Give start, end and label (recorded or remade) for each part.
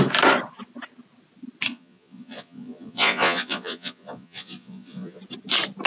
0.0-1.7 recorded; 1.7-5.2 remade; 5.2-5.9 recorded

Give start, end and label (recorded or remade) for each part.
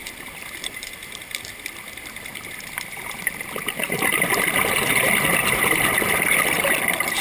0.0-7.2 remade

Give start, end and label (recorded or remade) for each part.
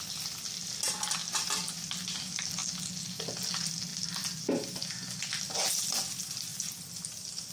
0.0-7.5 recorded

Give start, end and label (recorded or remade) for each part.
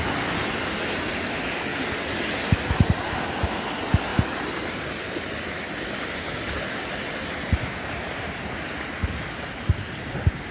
0.0-1.7 recorded; 1.7-2.2 remade; 2.2-4.1 recorded; 4.1-8.9 remade; 8.9-10.5 recorded